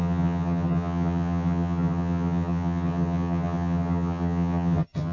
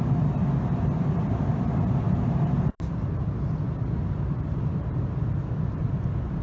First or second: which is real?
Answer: second